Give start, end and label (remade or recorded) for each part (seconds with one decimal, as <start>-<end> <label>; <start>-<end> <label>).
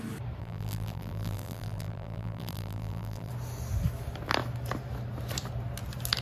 0.0-0.4 recorded; 0.4-3.3 remade; 3.3-6.2 recorded